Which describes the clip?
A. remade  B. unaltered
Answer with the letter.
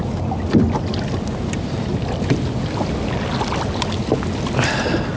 B